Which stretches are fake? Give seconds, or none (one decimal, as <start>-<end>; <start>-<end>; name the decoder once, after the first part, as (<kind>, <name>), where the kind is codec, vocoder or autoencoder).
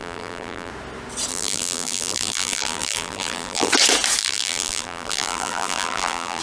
0.0-0.7 (vocoder, BigVGAN v2); 1.3-3.7; 4.2-6.4